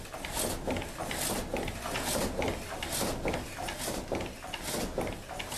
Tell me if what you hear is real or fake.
real